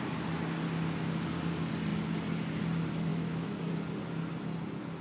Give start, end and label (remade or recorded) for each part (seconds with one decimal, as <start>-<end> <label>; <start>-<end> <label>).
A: 0.0-3.1 recorded; 3.1-3.7 remade; 3.7-5.0 recorded